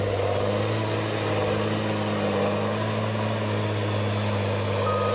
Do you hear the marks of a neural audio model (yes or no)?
no